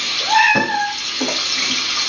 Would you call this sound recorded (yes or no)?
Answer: yes